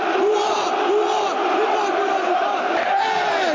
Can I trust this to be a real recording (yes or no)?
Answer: yes